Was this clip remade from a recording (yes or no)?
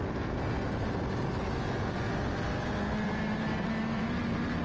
no